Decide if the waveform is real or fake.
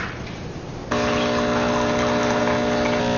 real